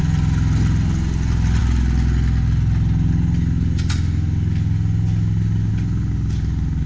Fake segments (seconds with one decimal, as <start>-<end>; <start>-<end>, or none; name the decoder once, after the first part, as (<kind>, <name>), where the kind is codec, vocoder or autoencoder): none